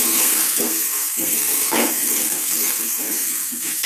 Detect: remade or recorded remade